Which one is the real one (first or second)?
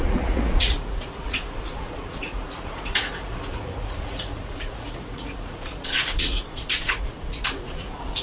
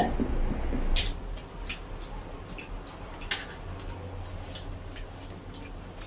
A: second